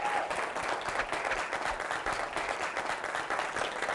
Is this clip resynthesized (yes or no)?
no